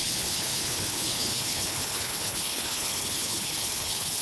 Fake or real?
fake